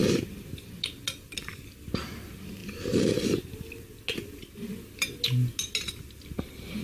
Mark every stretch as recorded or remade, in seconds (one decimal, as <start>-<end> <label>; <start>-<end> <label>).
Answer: 0.0-6.8 recorded

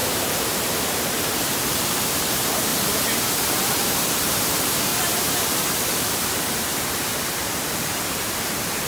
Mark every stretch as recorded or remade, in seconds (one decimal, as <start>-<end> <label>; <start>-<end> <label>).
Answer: 0.0-2.7 remade; 2.7-3.8 recorded; 3.8-4.9 remade; 4.9-5.6 recorded; 5.6-7.1 remade; 7.1-8.3 recorded; 8.3-8.9 remade

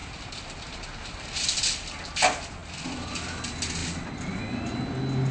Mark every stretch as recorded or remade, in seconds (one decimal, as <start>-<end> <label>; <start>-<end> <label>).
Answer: 0.0-1.6 remade; 1.6-5.3 recorded

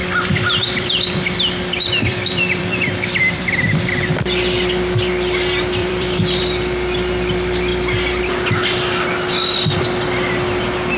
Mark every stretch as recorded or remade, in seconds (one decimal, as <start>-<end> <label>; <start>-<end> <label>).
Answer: 0.0-4.1 remade; 4.1-5.8 recorded; 5.8-6.4 remade; 6.4-11.0 recorded

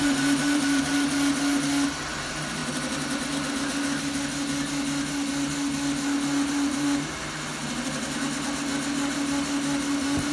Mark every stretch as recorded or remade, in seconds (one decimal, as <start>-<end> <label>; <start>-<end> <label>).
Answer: 0.0-0.9 remade; 0.9-2.2 recorded; 2.2-2.6 remade; 2.6-6.5 recorded; 6.5-7.6 remade; 7.6-9.9 recorded; 9.9-10.3 remade

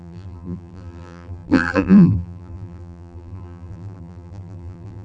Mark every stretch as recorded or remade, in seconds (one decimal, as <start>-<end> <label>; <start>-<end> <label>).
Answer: 0.0-5.0 remade